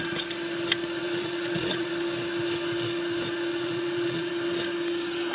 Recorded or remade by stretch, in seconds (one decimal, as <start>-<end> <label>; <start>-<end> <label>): 0.0-1.0 recorded; 1.0-1.9 remade; 1.9-3.5 recorded; 3.5-4.3 remade; 4.3-5.3 recorded